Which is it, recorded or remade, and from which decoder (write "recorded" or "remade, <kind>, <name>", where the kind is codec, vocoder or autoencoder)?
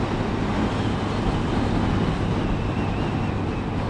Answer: recorded